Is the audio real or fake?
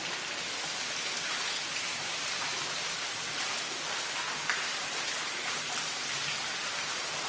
real